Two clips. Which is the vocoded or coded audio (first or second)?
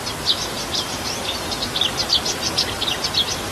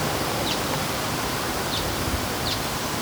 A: second